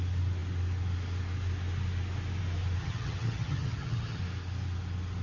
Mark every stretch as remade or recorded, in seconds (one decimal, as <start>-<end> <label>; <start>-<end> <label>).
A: 0.0-2.8 recorded; 2.8-4.2 remade; 4.2-5.2 recorded